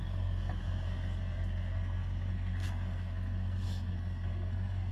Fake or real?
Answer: fake